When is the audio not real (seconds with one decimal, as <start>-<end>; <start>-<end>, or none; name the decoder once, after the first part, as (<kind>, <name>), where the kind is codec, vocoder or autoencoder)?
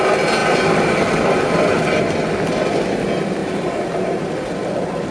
3.4-4.3 (vocoder, BigVGAN v2)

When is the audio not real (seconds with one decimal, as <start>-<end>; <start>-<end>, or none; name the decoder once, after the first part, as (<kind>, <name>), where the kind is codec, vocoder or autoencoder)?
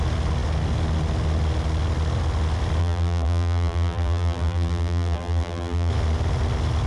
2.8-5.9 (vocoder, BigVGAN v2)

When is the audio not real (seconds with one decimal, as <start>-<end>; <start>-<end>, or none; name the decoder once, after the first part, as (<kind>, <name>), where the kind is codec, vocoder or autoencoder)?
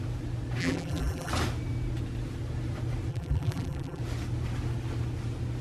0.6-1.3 (vocoder, BigVGAN v2); 3.1-4.0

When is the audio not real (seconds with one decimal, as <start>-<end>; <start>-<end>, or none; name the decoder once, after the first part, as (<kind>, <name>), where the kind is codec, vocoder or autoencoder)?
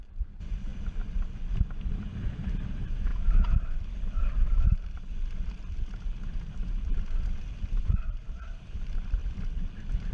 0.0-0.7 (vocoder, BigVGAN v2); 1.9-3.1; 7.8-9.2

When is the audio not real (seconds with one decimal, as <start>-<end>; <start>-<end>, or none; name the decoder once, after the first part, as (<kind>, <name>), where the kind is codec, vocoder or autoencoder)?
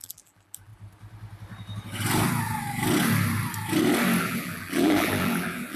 0.0-0.7 (vocoder, BigVGAN v2); 4.2-5.8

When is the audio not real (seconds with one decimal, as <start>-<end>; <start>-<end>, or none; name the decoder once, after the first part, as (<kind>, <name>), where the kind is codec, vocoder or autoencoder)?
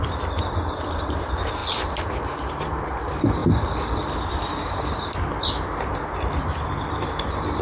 0.0-7.6 (vocoder, BigVGAN v2)